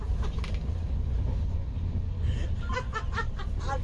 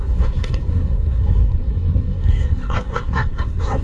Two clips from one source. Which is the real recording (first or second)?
first